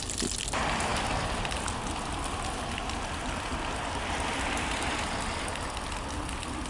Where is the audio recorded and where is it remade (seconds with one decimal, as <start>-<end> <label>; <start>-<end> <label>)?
0.0-6.7 recorded